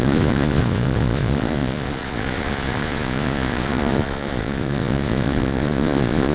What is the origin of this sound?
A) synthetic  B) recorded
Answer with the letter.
A